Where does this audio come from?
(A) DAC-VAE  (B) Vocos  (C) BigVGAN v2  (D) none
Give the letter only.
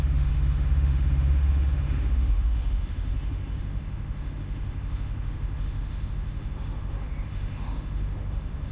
A